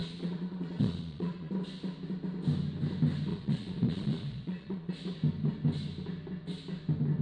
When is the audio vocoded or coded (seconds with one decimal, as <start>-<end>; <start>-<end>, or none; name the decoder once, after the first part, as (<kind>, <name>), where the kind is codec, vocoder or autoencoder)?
0.0-1.5 (vocoder, Vocos); 3.3-4.9